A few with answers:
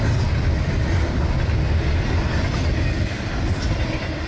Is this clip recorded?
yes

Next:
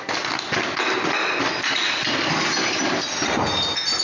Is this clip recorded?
yes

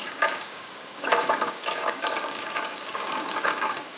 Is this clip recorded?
no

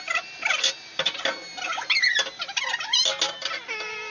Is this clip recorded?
yes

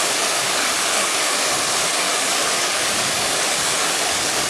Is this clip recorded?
no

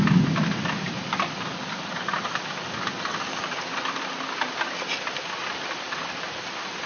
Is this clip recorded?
yes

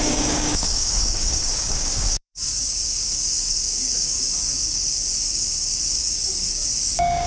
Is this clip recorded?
no